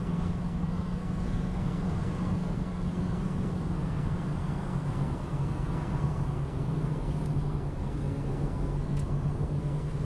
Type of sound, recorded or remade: remade